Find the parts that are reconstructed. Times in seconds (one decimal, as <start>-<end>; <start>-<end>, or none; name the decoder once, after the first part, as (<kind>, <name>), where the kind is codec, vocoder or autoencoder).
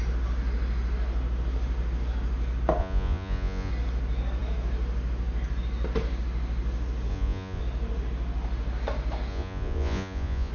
2.8-3.7 (vocoder, Vocos); 7.1-7.6; 9.3-10.5